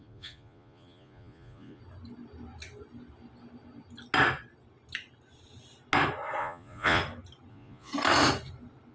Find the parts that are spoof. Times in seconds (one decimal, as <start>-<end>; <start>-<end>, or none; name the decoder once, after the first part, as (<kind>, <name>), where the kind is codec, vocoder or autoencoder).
0.0-1.8 (vocoder, Vocos); 6.4-7.0; 7.5-7.9